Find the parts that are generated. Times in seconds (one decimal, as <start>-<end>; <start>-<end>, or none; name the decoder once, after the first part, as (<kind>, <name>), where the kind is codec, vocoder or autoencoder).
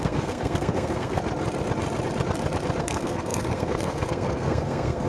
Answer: 0.0-1.2 (codec, SNAC); 2.8-5.1